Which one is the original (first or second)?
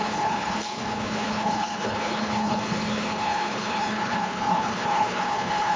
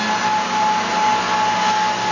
second